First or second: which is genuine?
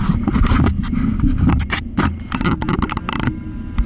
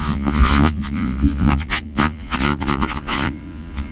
first